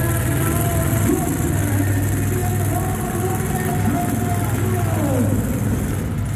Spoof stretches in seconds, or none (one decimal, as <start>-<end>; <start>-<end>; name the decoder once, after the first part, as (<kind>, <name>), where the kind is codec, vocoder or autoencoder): none